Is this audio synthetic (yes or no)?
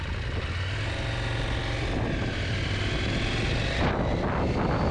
no